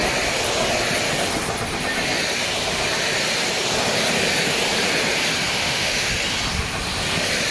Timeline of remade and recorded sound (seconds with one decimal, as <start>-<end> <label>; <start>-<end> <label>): 0.0-5.5 recorded; 5.5-6.1 remade; 6.1-7.5 recorded